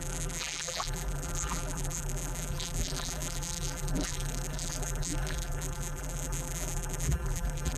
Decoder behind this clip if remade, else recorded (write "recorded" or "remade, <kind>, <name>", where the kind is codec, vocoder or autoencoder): remade, vocoder, BigVGAN v2